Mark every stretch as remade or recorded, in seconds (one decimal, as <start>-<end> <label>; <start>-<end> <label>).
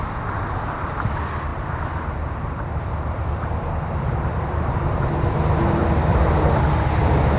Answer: 0.0-1.5 recorded; 1.5-5.6 remade; 5.6-6.1 recorded; 6.1-6.6 remade; 6.6-7.4 recorded